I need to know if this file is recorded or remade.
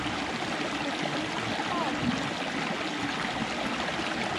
recorded